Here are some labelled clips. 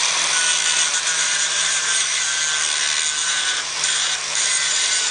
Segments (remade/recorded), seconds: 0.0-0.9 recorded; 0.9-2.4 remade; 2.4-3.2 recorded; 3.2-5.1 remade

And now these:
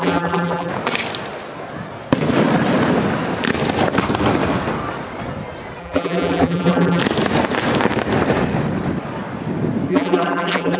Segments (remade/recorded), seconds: 0.0-0.7 remade; 0.7-5.8 recorded; 5.8-7.0 remade; 7.0-9.9 recorded; 9.9-10.8 remade

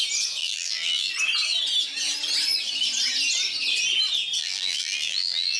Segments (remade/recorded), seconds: 0.0-0.4 recorded; 0.4-1.1 remade; 1.1-4.4 recorded; 4.4-5.6 remade

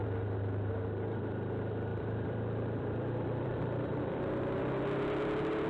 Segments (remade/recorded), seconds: 0.0-1.9 recorded; 1.9-4.2 remade; 4.2-5.7 recorded

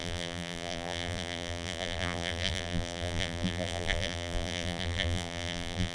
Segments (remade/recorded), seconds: 0.0-5.9 remade